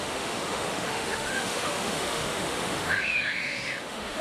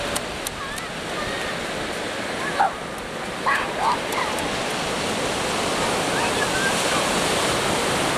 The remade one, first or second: first